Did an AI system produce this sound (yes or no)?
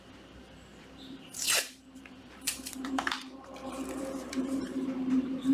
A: yes